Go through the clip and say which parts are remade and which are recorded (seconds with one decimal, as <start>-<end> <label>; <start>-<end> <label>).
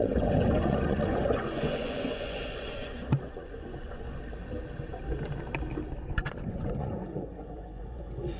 0.0-4.2 remade; 4.2-6.0 recorded; 6.0-8.4 remade